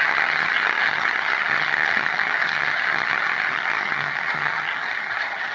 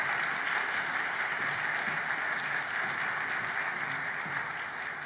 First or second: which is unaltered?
second